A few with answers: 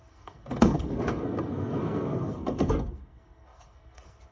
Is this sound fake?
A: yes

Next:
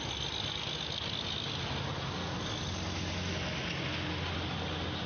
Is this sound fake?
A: no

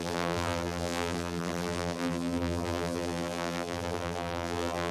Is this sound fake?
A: yes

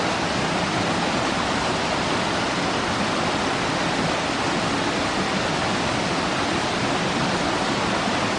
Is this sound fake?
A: no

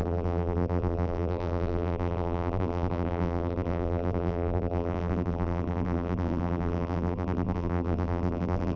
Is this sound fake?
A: yes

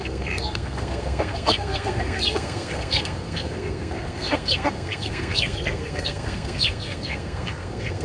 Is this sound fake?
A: yes